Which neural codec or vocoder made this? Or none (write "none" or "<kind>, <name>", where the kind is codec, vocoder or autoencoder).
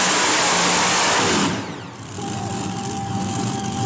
none